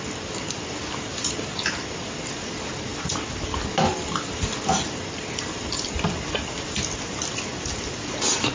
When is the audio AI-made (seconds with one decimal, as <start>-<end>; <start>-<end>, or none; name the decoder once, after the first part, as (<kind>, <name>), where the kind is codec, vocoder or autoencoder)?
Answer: none